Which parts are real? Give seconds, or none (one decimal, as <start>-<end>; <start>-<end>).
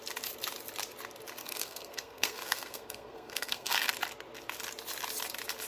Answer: 0.0-1.4; 3.9-5.7